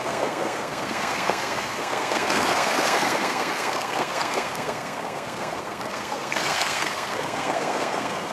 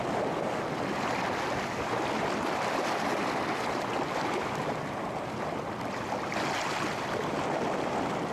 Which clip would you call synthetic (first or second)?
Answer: first